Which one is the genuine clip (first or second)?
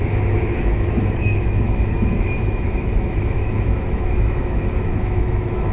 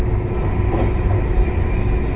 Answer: second